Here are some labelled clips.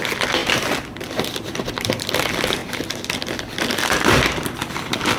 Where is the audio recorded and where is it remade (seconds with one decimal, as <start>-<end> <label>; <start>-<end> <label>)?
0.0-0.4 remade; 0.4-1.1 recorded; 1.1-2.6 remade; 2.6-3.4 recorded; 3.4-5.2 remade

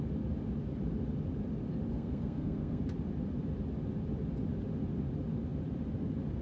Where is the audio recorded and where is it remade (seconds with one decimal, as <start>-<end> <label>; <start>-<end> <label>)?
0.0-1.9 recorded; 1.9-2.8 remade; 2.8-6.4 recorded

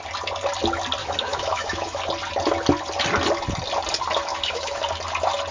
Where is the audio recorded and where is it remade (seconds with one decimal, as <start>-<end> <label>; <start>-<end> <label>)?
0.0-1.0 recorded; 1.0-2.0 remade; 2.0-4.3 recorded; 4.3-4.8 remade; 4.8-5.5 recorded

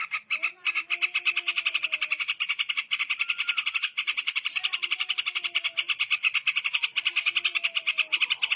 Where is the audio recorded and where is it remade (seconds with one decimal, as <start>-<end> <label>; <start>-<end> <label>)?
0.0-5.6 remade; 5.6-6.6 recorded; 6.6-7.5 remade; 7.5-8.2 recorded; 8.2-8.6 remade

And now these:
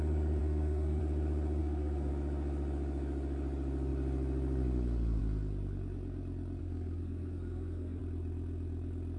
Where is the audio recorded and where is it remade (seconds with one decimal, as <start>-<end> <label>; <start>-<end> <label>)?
0.0-0.4 recorded; 0.4-1.0 remade; 1.0-1.6 recorded; 1.6-2.1 remade; 2.1-6.6 recorded; 6.6-8.0 remade; 8.0-9.2 recorded

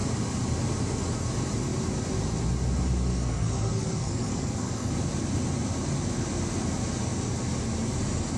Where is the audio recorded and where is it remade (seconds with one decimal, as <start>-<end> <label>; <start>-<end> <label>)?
0.0-3.1 recorded; 3.1-4.9 remade; 4.9-8.4 recorded

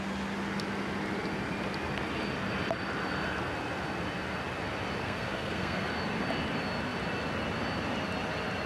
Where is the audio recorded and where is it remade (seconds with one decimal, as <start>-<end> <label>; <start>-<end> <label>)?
0.0-5.0 recorded; 5.0-5.9 remade; 5.9-8.7 recorded

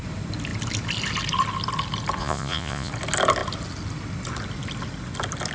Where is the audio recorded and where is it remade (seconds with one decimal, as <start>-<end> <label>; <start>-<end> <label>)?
0.0-2.2 recorded; 2.2-2.9 remade; 2.9-5.5 recorded